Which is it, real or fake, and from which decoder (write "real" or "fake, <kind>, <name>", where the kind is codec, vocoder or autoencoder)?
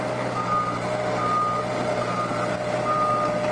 real